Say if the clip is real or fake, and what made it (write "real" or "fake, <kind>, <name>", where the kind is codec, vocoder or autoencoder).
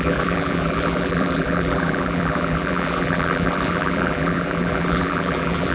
fake, vocoder, BigVGAN v2